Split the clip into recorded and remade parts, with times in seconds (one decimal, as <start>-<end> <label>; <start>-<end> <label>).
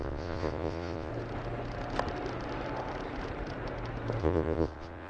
0.0-1.1 remade; 1.1-4.2 recorded; 4.2-5.1 remade